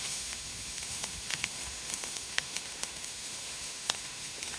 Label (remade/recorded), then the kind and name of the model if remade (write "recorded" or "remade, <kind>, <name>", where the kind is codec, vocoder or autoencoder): remade, autoencoder, DAC-VAE